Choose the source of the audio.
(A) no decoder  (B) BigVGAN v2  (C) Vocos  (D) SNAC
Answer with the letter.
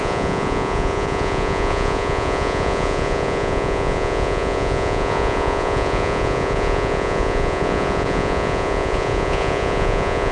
C